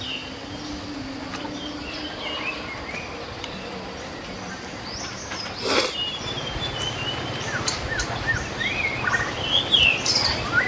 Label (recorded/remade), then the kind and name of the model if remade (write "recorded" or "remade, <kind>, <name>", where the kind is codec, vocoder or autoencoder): recorded